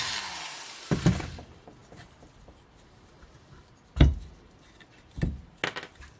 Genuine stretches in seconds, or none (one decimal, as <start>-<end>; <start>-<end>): 0.0-6.2